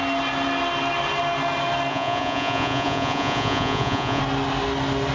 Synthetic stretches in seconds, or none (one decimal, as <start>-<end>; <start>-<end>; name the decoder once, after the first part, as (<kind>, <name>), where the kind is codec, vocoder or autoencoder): 1.9-4.2 (vocoder, Vocos)